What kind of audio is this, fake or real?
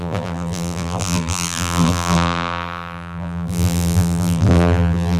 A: fake